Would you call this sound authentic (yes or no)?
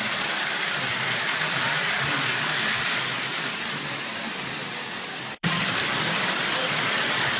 no